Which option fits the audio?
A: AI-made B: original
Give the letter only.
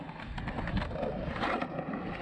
B